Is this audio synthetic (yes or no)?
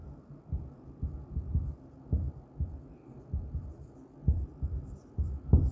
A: no